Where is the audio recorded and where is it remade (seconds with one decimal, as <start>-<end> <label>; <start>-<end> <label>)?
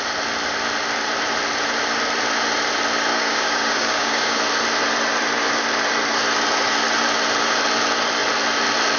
0.0-3.1 recorded; 3.1-4.4 remade; 4.4-9.0 recorded